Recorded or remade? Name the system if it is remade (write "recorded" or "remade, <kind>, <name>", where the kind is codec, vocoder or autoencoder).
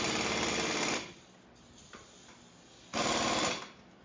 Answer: recorded